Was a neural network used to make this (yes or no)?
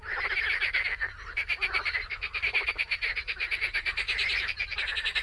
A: yes